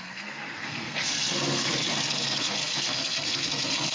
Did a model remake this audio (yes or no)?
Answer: yes